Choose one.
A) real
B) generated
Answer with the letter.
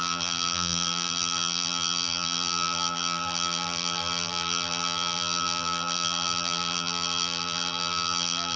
B